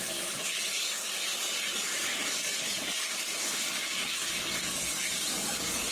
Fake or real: fake